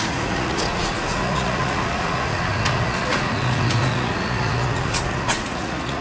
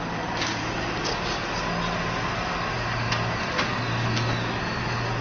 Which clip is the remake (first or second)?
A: first